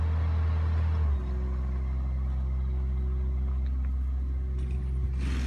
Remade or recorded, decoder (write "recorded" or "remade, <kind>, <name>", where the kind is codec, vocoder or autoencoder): recorded